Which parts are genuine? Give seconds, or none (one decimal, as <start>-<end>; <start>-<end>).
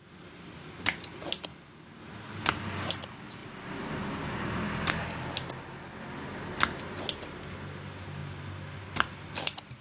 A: 0.0-9.8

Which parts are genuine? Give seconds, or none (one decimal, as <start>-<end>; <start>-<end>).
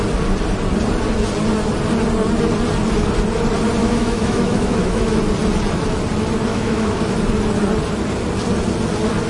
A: 0.0-3.8; 5.2-6.5; 7.1-9.3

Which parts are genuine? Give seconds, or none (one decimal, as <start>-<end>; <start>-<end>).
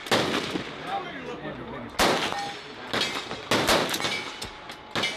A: 0.0-5.2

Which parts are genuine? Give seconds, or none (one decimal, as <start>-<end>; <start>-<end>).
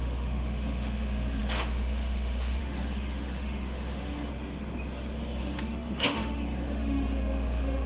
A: 4.3-5.4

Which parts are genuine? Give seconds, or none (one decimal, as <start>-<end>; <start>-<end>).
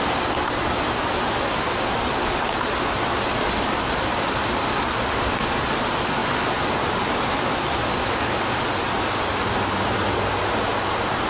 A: 0.0-11.3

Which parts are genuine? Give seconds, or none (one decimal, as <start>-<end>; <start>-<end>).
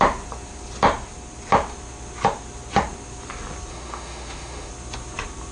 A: 0.0-3.7; 4.7-5.5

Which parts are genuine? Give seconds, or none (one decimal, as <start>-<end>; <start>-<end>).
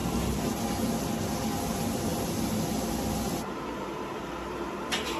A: 0.0-5.2